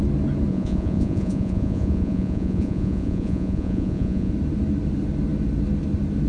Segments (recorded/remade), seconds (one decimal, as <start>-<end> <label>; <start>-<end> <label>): 0.0-0.5 recorded; 0.5-4.3 remade; 4.3-6.3 recorded